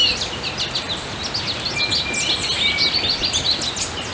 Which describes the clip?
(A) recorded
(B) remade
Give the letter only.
A